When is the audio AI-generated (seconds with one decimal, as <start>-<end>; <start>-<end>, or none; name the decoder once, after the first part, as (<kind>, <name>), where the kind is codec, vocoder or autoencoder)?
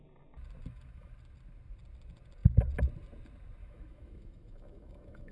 0.6-1.1 (autoencoder, DAC-VAE); 3.6-5.3